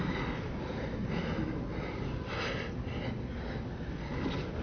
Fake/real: real